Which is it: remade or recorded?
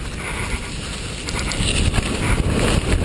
recorded